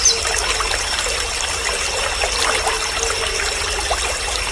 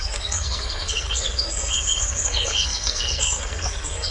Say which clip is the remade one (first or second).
second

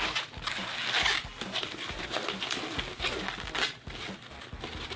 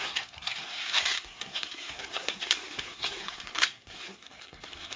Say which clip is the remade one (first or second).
second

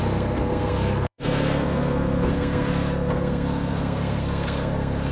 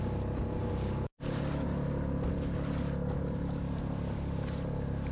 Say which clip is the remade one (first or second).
first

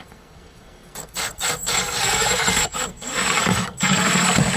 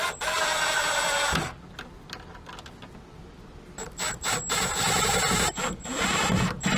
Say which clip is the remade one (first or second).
first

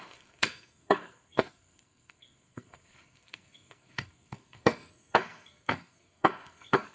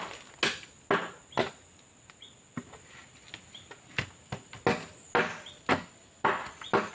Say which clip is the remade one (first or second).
first